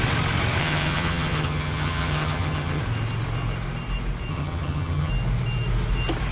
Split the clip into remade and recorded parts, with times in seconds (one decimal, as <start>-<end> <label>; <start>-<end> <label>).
0.0-0.6 recorded; 0.6-2.8 remade; 2.8-4.3 recorded; 4.3-5.1 remade; 5.1-6.3 recorded